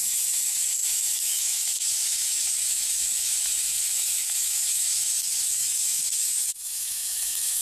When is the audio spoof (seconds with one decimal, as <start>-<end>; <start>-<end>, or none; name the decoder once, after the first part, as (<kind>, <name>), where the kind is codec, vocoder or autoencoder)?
0.0-7.6 (autoencoder, DAC-VAE)